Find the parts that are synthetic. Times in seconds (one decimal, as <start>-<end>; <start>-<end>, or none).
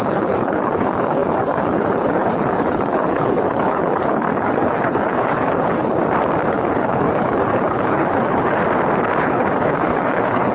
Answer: 0.0-5.9; 6.5-8.6; 9.2-10.5